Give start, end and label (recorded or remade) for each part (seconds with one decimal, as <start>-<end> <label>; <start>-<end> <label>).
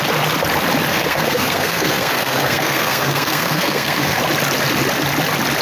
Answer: 0.0-0.9 recorded; 0.9-4.2 remade; 4.2-5.6 recorded